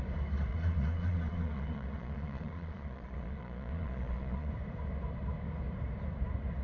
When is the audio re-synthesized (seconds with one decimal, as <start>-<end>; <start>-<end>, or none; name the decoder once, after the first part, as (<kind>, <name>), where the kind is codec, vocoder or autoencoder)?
0.5-4.5 (vocoder, Vocos)